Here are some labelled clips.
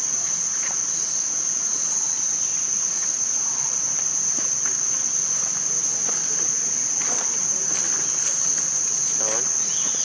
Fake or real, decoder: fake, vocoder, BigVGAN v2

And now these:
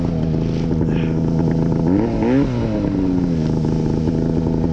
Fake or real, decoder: real